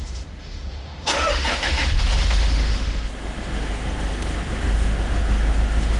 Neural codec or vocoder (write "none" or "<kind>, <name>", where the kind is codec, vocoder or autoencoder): autoencoder, DAC-VAE